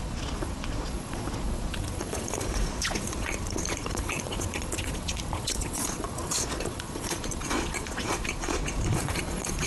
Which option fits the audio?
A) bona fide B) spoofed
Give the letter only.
B